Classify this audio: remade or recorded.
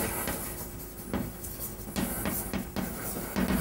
recorded